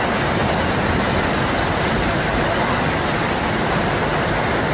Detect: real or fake real